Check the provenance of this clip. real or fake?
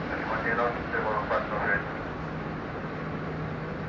real